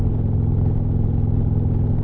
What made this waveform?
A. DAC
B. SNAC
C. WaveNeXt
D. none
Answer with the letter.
D